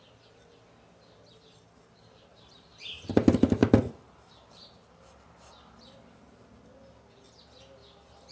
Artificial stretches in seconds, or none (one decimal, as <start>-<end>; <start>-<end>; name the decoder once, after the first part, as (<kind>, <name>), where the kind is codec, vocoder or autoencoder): 2.3-3.1 (vocoder, BigVGAN v2); 3.6-5.3